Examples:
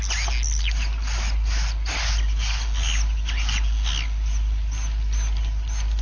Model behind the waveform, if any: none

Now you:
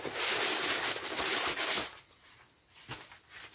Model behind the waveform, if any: none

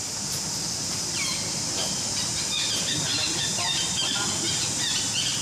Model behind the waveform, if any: none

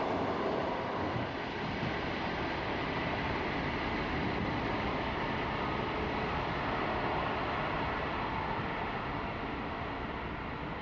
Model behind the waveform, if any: none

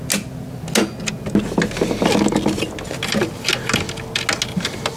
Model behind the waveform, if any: none